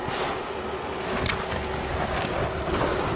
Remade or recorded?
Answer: recorded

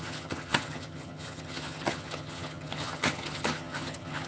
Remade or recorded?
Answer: remade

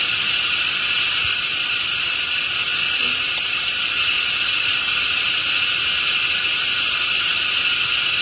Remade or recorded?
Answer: recorded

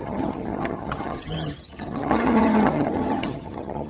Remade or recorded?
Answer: remade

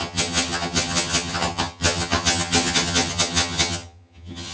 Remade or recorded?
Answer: remade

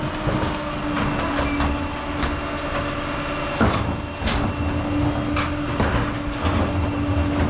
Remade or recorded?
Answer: recorded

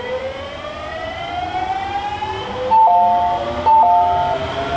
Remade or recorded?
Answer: recorded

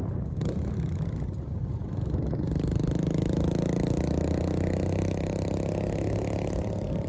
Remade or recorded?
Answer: recorded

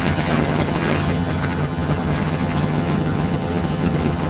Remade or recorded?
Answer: remade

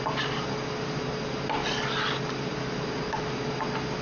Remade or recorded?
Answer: recorded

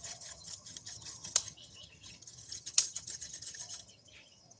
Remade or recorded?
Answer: remade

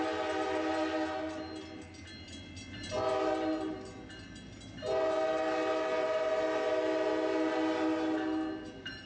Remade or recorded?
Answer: recorded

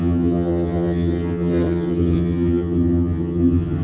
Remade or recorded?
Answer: remade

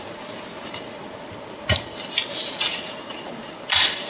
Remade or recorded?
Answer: recorded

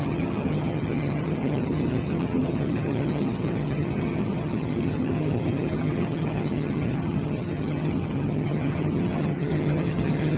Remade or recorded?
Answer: remade